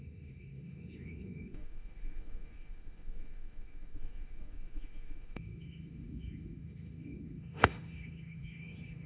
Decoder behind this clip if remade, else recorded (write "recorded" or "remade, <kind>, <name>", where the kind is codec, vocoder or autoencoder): remade, autoencoder, DAC-VAE